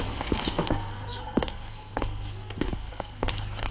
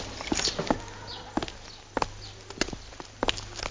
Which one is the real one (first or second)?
second